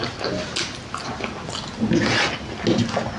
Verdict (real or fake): real